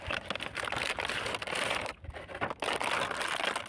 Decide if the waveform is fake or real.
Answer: real